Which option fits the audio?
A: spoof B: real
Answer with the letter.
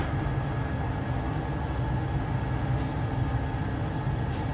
B